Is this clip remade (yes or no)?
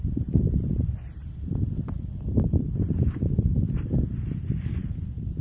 yes